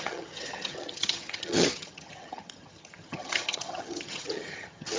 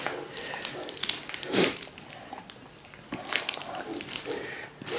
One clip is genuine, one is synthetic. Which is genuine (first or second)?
second